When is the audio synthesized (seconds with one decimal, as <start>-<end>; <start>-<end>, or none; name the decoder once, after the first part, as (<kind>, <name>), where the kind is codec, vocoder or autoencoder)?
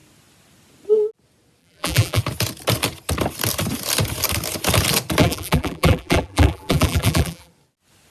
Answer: 1.6-2.2 (vocoder, BigVGAN v2); 5.2-7.5